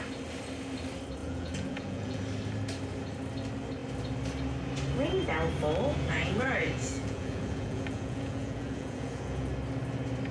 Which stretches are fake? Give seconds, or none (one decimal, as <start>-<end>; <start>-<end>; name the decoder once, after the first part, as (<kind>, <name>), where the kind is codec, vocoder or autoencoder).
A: 1.2-2.2 (vocoder, Vocos); 5.9-9.5